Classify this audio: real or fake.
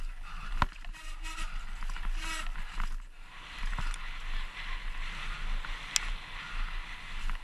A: real